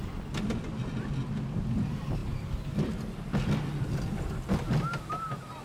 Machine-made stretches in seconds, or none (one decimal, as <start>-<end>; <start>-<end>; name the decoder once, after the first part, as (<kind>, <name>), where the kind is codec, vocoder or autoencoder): none